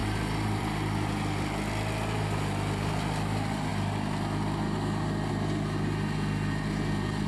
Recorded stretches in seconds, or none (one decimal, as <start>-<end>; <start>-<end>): 0.0-7.3